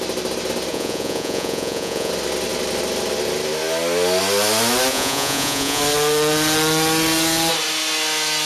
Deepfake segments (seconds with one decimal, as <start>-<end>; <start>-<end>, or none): 0.7-2.1; 4.9-5.8